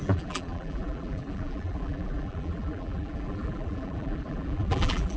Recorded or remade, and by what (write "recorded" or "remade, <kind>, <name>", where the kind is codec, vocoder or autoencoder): remade, vocoder, BigVGAN v2